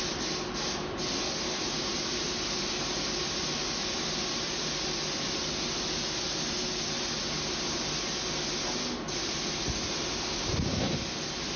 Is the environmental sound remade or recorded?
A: recorded